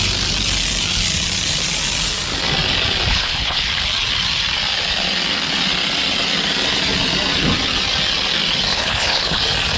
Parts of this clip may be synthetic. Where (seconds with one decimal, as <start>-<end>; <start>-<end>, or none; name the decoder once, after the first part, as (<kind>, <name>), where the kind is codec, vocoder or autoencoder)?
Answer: 3.1-3.7 (codec, HILCodec); 8.7-9.4